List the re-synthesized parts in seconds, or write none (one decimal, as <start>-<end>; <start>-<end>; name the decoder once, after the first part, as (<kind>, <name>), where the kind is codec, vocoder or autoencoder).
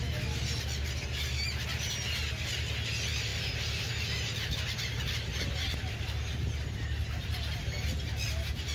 none